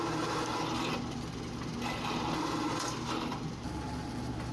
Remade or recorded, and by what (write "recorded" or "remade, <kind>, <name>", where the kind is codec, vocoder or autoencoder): recorded